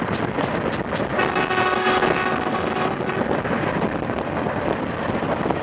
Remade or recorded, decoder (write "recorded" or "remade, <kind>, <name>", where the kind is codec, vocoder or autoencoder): recorded